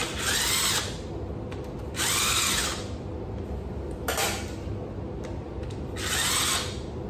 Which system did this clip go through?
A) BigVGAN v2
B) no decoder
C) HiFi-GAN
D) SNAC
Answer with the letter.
B